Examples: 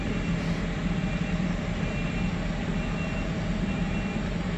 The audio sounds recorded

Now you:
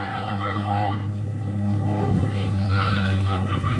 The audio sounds remade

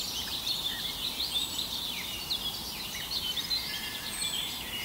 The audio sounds remade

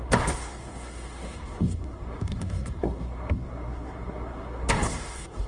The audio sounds remade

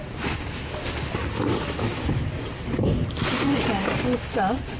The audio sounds recorded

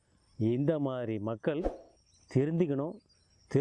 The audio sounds recorded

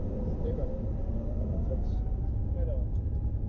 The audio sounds recorded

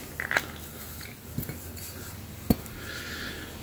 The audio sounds recorded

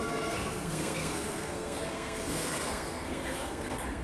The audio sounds remade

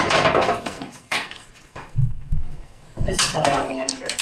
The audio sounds remade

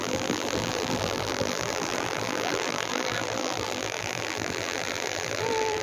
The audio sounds remade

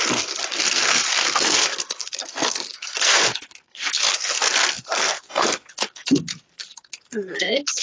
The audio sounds remade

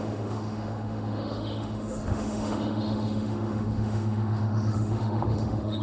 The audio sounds remade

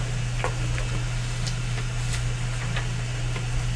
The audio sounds recorded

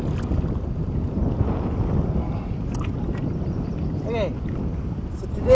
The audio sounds recorded